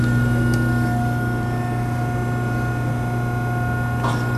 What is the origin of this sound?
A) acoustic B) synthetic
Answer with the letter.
A